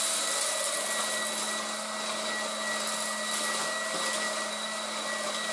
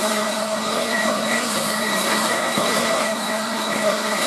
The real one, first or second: first